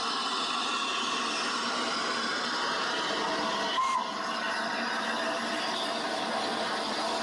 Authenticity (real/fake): real